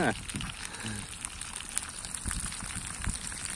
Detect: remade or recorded recorded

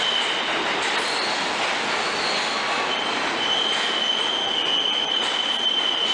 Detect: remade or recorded recorded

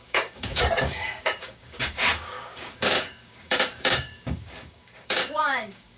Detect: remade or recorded remade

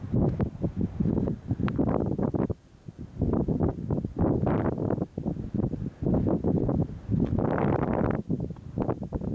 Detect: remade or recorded recorded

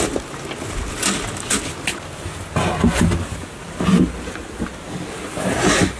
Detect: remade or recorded recorded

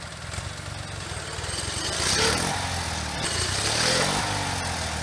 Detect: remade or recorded recorded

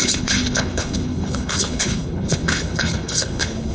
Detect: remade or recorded remade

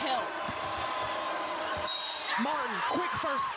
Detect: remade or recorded remade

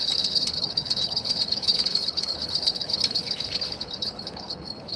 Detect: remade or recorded remade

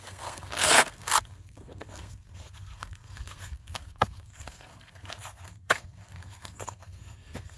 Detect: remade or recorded remade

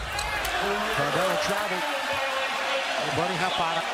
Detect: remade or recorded recorded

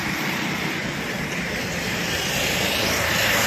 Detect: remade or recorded recorded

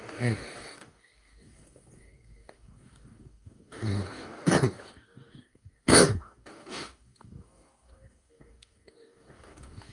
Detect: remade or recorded remade